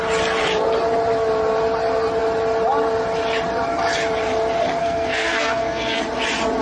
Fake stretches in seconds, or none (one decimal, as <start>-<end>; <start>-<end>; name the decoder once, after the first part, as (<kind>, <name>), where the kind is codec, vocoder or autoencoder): 4.8-6.0 (codec, SNAC)